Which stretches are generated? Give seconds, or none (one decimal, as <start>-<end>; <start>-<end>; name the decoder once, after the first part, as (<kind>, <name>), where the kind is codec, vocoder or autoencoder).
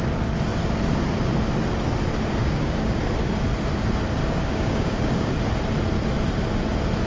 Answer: 2.4-3.0 (codec, DAC); 4.2-5.3